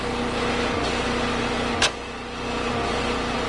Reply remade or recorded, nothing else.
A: recorded